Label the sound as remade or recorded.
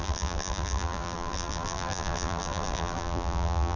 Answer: remade